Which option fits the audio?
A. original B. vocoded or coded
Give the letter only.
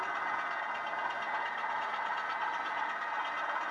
A